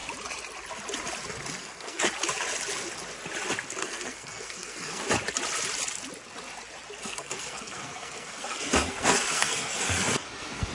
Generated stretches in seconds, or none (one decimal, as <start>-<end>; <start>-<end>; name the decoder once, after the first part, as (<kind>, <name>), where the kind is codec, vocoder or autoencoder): 1.6-2.1 (codec, SNAC); 3.8-5.0; 7.0-10.7

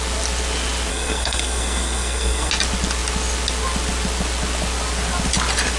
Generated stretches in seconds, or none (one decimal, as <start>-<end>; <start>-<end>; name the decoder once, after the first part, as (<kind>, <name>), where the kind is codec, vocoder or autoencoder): 0.9-2.5 (codec, SNAC)

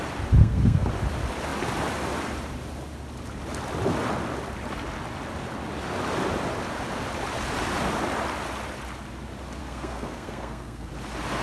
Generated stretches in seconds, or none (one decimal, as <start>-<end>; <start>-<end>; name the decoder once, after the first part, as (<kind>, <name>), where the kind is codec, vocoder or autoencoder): 0.4-0.9 (codec, SNAC); 9.6-10.9

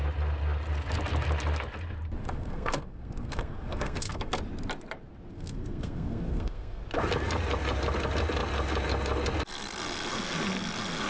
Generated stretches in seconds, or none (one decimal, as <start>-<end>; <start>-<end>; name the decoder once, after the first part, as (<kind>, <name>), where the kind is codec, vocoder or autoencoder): 2.2-4.4 (codec, SNAC); 5.3-6.8